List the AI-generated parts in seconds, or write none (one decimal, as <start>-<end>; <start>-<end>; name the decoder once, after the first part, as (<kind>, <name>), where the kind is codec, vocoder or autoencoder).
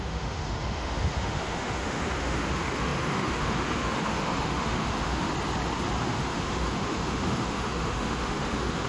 0.0-5.3 (autoencoder, DAC-VAE); 6.0-8.9